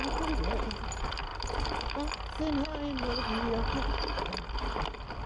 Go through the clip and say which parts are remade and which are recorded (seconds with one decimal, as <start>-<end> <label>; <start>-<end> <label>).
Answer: 0.0-5.3 recorded

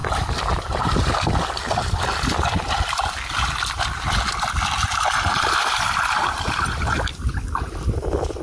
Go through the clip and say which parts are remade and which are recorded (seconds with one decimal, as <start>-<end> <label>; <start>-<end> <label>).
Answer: 0.0-8.4 recorded